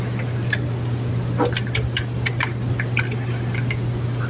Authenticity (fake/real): real